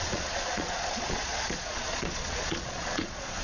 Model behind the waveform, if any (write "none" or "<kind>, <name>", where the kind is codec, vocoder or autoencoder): vocoder, Vocos